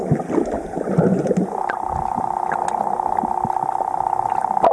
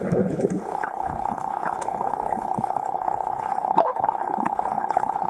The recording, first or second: first